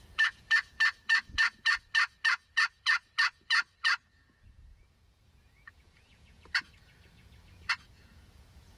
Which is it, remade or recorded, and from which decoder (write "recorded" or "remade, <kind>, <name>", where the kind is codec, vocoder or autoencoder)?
remade, vocoder, Vocos